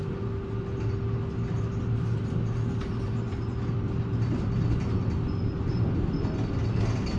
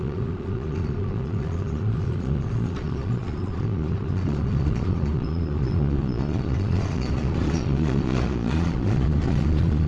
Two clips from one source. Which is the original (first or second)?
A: first